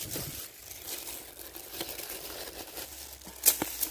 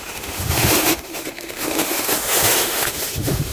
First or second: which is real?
first